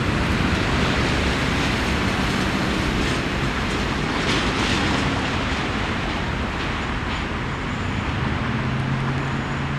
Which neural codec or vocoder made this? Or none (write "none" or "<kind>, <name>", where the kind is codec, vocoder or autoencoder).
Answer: none